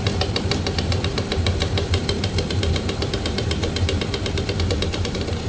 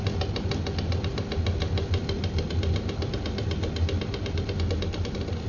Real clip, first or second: second